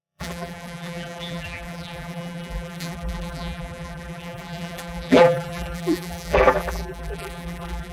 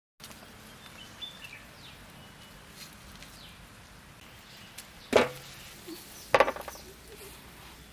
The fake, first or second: first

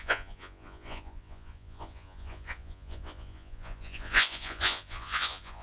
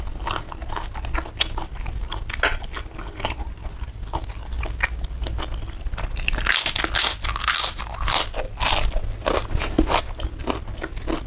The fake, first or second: first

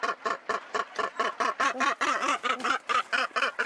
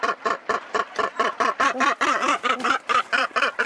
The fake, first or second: second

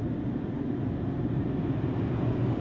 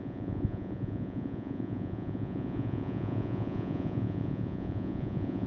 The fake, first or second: second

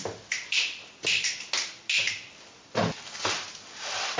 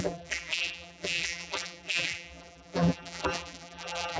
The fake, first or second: second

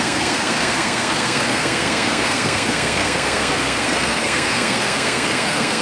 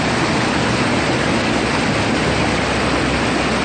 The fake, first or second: first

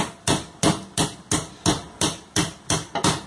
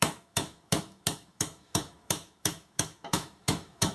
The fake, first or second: second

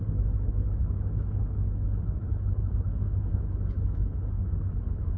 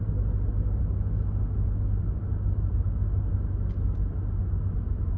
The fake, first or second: first